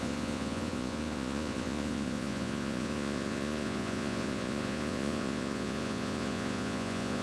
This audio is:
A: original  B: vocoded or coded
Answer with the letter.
B